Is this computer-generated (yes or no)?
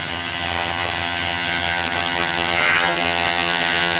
yes